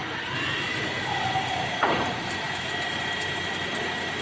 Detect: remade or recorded recorded